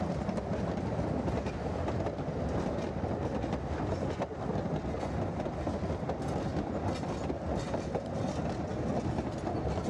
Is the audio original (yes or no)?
yes